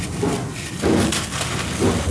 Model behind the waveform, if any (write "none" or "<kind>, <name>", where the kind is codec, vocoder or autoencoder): none